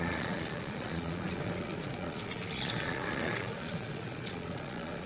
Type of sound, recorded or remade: remade